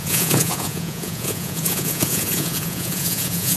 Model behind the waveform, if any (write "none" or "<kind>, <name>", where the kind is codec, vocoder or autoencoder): vocoder, Vocos